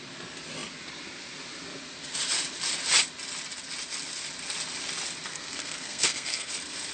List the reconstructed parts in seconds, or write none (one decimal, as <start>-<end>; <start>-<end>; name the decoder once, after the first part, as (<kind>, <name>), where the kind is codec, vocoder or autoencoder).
5.3-6.5 (codec, SNAC)